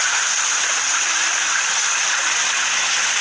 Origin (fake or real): real